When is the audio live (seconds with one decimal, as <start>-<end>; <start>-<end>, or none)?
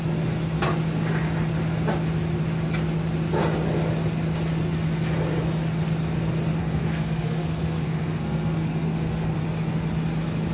0.0-6.6; 9.4-10.5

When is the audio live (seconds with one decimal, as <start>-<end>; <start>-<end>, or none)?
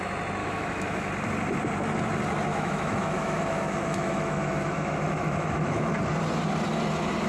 0.0-0.4; 1.1-2.5; 5.9-7.3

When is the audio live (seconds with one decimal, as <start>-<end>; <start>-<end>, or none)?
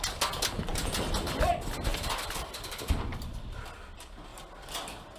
0.0-1.9; 3.6-5.2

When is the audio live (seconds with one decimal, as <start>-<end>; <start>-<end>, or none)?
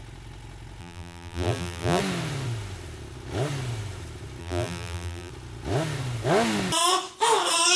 0.0-0.8; 2.0-4.4; 5.3-7.8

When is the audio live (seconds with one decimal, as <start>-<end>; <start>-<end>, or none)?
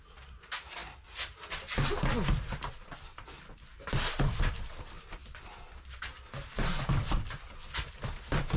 0.0-8.6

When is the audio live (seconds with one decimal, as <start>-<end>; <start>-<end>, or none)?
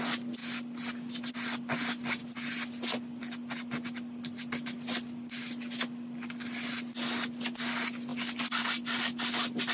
0.0-9.7